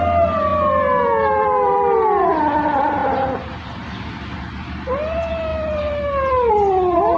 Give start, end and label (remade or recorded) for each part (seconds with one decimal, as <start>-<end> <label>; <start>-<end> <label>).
0.0-7.2 recorded